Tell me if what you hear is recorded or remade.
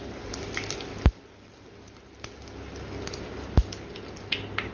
recorded